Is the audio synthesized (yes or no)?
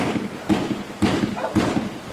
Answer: no